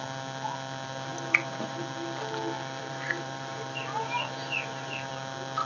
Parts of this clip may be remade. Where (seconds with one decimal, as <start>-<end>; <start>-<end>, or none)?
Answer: 1.1-1.8; 2.8-5.1